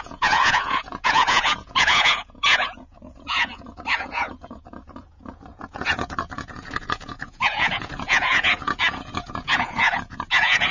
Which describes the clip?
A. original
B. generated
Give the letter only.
B